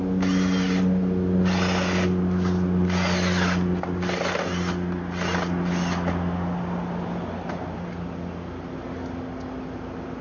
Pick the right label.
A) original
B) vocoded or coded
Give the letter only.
A